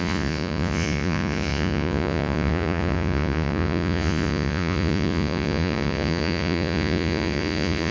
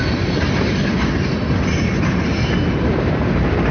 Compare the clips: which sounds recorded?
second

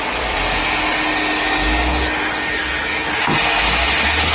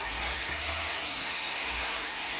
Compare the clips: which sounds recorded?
first